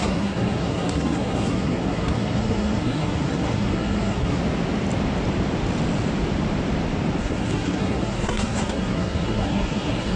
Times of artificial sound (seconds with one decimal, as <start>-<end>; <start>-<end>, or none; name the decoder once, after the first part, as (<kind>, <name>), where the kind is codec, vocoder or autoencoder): 0.0-4.4 (codec, SNAC); 7.2-10.2